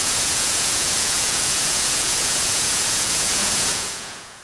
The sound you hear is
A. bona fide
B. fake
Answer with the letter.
B